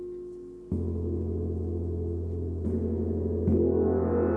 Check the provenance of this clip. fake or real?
real